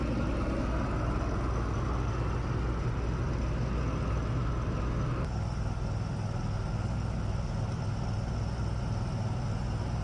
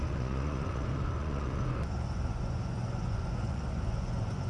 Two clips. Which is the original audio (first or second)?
first